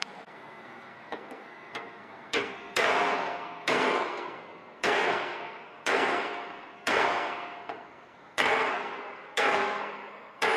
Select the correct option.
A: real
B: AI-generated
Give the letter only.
B